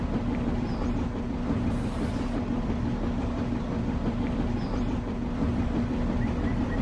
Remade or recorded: remade